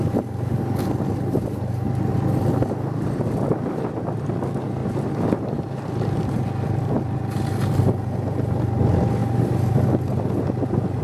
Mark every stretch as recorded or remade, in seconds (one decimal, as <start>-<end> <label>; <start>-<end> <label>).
0.0-4.8 recorded; 4.8-7.6 remade; 7.6-9.2 recorded; 9.2-10.0 remade; 10.0-11.0 recorded